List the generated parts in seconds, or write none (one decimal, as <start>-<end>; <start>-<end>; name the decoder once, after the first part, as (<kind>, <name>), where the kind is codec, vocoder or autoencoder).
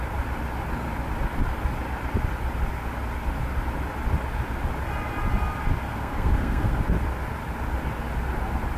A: 5.9-6.8 (codec, SNAC)